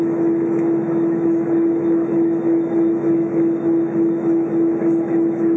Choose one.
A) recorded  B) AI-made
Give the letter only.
B